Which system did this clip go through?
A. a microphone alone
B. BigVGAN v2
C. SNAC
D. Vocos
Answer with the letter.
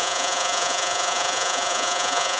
D